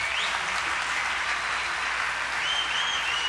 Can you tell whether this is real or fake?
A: real